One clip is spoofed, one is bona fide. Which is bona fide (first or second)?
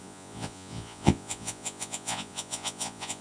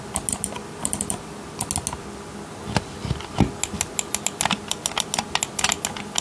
second